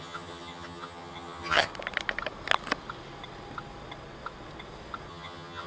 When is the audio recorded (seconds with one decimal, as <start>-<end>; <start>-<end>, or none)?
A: 1.7-5.1